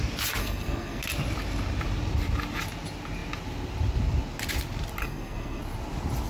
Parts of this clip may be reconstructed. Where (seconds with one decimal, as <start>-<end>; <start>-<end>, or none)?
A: 0.4-1.0; 5.0-5.6